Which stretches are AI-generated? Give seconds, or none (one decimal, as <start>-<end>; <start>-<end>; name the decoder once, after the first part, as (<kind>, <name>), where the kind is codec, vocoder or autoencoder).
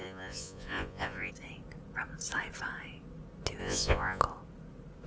0.0-1.3 (vocoder, Vocos); 3.6-4.2